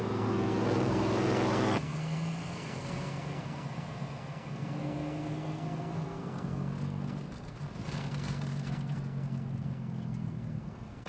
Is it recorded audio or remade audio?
remade